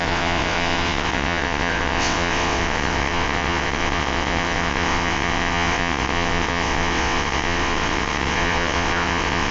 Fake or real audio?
fake